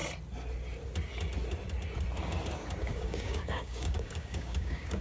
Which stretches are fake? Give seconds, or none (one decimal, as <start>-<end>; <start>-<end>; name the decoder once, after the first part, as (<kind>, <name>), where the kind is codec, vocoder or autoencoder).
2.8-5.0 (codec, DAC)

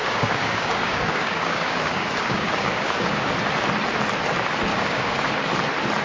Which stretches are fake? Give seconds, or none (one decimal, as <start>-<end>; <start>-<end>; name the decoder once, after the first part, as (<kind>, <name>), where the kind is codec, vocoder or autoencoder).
0.0-3.3 (codec, DAC); 4.7-5.3

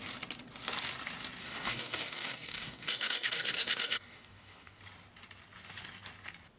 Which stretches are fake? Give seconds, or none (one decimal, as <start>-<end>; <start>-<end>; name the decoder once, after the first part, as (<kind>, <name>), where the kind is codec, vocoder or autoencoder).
1.4-4.8 (codec, DAC)

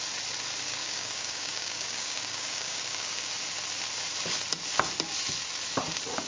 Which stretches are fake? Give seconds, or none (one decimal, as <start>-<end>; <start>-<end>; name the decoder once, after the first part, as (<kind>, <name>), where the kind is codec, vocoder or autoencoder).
0.8-3.3 (codec, DAC)

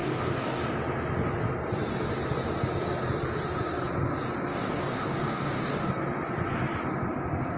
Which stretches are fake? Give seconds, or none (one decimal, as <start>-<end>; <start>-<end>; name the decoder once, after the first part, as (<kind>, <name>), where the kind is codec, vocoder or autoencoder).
0.0-0.6 (codec, DAC); 4.5-5.9

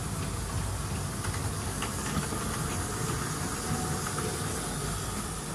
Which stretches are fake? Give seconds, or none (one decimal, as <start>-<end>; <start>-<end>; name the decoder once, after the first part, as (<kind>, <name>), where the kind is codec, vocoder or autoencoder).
1.4-2.4 (codec, DAC)

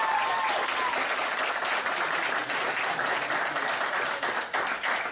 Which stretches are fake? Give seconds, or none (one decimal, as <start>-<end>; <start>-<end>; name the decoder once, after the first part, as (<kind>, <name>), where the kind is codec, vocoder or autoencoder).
none

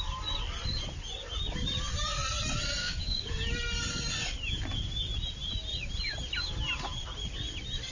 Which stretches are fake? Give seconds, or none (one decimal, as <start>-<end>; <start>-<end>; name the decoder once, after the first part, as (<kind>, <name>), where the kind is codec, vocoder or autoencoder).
2.8-3.3 (codec, DAC)